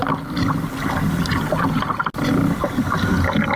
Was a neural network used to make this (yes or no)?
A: no